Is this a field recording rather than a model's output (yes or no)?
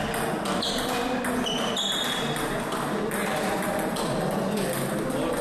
yes